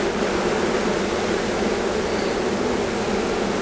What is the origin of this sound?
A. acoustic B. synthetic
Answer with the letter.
A